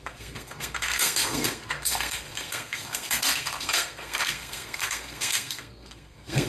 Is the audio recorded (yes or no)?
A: no